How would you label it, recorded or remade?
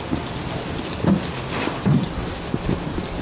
recorded